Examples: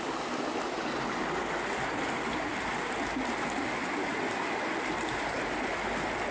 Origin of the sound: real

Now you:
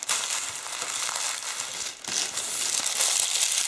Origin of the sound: real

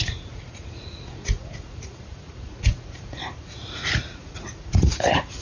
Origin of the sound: fake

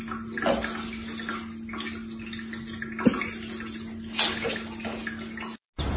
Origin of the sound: real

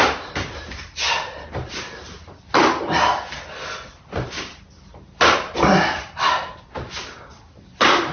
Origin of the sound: real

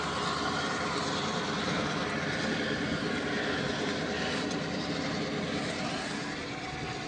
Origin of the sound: real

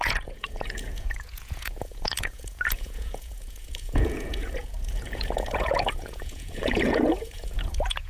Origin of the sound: fake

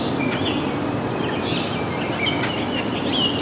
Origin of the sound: real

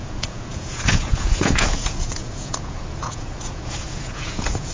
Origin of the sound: fake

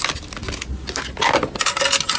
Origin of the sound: real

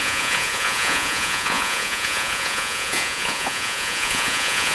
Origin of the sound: fake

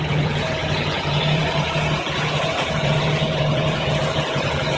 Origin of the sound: fake